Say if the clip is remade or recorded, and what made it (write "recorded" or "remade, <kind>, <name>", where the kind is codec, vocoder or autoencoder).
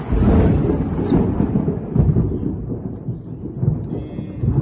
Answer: recorded